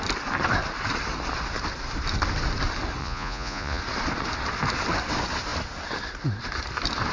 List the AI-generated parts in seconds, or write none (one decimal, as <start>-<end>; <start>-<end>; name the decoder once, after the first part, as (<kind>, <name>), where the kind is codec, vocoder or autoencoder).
3.0-3.8 (vocoder, Vocos)